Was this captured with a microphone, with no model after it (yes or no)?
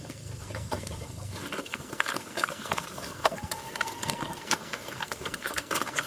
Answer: no